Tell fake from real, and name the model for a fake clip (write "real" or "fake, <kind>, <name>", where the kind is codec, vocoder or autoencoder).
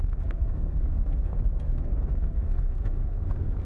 fake, codec, SNAC